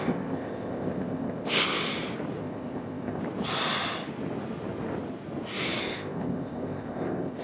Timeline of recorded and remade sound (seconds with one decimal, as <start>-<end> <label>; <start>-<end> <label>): 0.0-1.8 remade; 1.8-2.4 recorded; 2.4-3.2 remade; 3.2-5.8 recorded; 5.8-7.4 remade